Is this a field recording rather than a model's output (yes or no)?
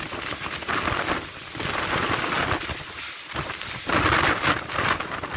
yes